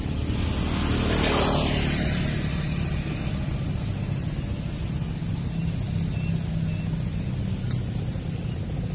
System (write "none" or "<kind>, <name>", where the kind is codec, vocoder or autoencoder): none